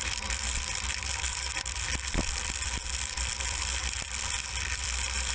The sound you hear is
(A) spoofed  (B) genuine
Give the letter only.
A